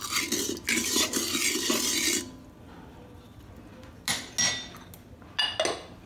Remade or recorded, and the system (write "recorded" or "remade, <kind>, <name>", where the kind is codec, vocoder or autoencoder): recorded